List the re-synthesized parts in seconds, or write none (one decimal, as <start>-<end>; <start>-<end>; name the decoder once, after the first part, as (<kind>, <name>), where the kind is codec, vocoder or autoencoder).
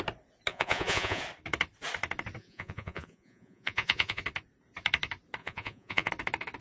0.5-1.2 (vocoder, Vocos); 2.4-4.2; 5.4-6.1